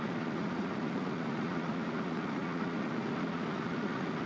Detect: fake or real fake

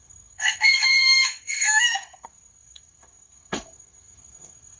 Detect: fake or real fake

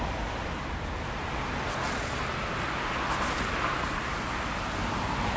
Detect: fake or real real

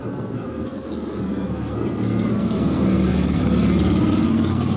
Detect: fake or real fake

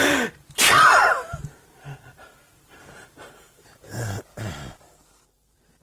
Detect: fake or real fake